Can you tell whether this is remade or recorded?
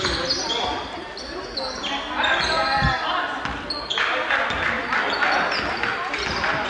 recorded